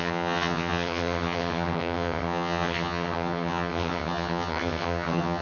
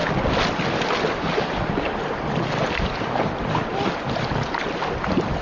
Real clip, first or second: second